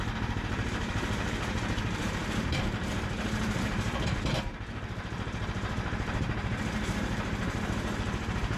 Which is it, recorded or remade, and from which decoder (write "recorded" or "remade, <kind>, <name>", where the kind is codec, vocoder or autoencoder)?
remade, vocoder, BigVGAN v2